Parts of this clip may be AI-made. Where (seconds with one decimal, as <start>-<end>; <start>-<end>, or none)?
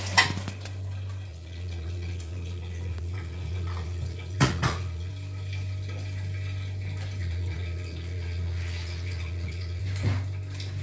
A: 1.3-5.1; 7.2-9.8